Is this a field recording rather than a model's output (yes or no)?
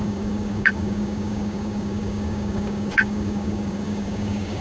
no